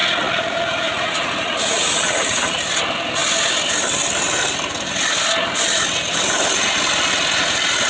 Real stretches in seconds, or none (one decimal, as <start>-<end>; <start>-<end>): 2.6-7.9